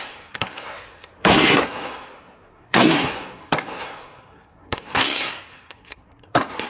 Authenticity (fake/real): fake